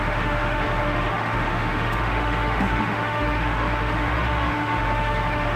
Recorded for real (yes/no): no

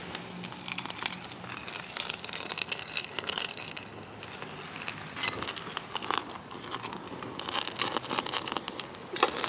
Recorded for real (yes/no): yes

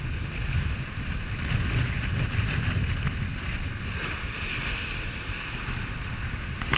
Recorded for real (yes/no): yes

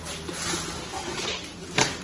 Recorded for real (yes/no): yes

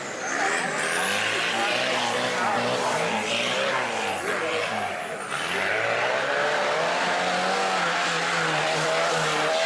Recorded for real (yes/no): yes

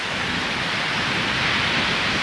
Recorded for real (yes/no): yes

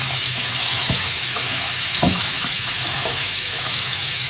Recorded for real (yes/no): no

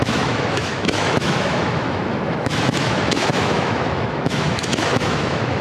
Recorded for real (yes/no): no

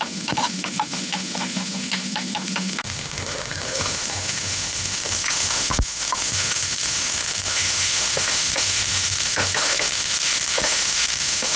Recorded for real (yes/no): no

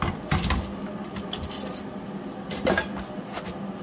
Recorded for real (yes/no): yes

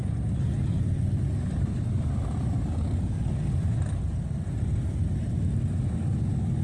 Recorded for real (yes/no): yes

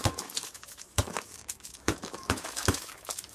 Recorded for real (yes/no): no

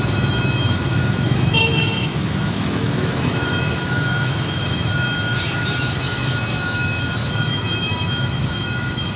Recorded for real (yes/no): no